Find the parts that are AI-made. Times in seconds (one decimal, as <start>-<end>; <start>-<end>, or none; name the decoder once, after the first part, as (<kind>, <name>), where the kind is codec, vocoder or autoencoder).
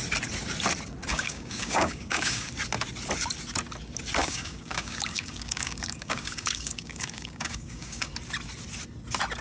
1.1-2.5 (codec, DAC); 4.2-8.1